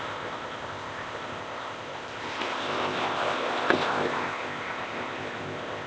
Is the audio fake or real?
fake